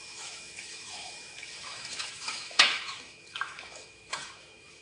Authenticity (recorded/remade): remade